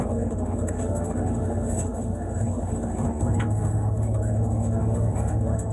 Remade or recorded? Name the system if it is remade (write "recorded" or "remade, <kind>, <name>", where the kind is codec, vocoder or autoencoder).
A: remade, autoencoder, DAC-VAE